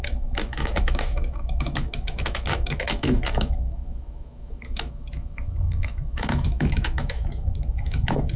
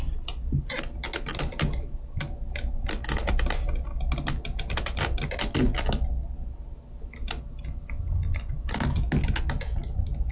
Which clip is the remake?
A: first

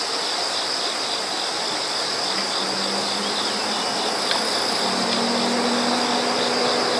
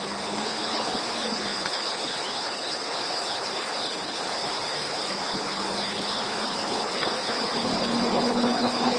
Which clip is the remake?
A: second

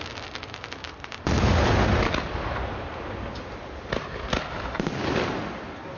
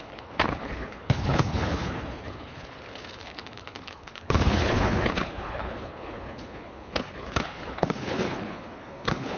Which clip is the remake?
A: second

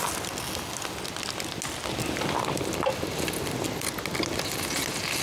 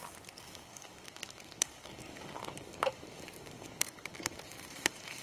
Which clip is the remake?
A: second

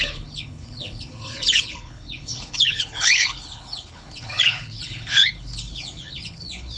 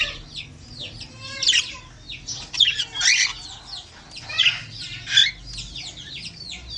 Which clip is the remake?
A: first